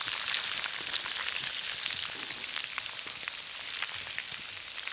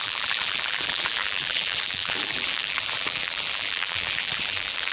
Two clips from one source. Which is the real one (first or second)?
first